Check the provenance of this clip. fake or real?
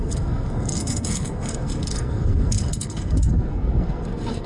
fake